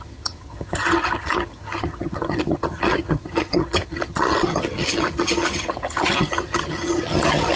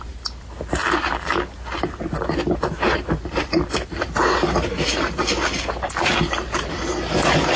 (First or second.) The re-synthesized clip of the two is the first